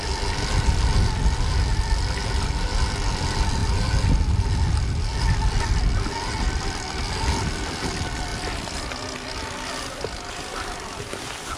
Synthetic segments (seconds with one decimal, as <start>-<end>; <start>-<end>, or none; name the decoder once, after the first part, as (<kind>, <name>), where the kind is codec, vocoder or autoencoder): none